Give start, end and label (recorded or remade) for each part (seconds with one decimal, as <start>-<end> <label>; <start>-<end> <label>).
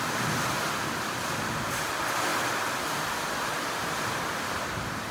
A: 0.0-5.1 recorded